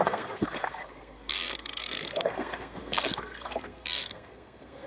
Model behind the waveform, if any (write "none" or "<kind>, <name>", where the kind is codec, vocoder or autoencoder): codec, SNAC